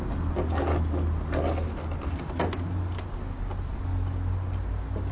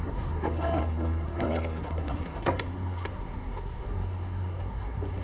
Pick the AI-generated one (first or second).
second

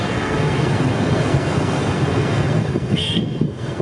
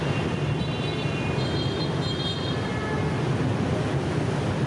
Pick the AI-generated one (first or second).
first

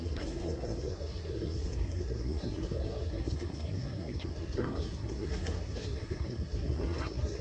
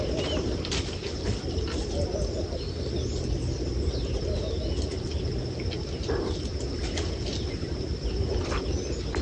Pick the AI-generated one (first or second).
first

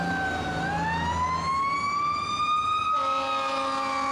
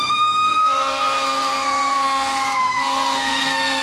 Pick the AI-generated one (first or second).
second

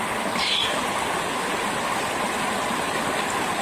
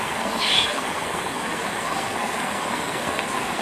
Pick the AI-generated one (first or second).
second